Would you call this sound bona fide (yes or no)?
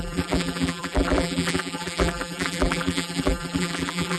no